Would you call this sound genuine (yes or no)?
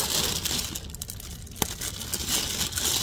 yes